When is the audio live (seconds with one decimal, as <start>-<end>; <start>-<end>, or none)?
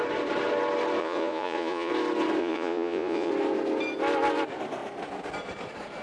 0.0-1.0; 1.9-2.4; 3.3-6.0